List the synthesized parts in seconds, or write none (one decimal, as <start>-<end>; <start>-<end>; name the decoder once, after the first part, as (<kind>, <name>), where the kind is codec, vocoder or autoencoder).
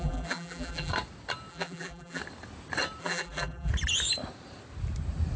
0.0-0.9 (vocoder, BigVGAN v2); 1.5-2.2; 3.0-3.7